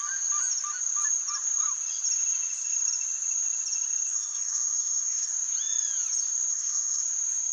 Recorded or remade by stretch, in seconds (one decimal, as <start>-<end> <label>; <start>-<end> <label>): 0.0-4.1 recorded; 4.1-5.3 remade; 5.3-6.5 recorded; 6.5-7.0 remade; 7.0-7.5 recorded